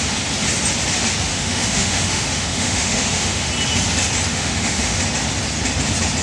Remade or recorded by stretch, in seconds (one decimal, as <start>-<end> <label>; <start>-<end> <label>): 0.0-1.3 recorded; 1.3-3.5 remade; 3.5-4.3 recorded; 4.3-5.0 remade; 5.0-6.2 recorded

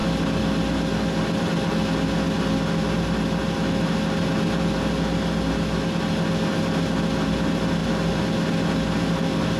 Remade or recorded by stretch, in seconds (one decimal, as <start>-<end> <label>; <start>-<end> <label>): 0.0-9.6 recorded

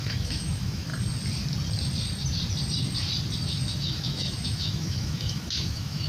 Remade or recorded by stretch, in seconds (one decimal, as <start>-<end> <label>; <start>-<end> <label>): 0.0-0.9 remade; 0.9-3.5 recorded; 3.5-6.1 remade